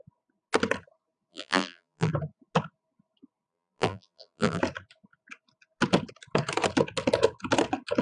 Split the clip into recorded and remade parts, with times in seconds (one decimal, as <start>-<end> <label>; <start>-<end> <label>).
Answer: 0.0-1.3 recorded; 1.3-2.1 remade; 2.1-3.5 recorded; 3.5-4.6 remade; 4.6-8.0 recorded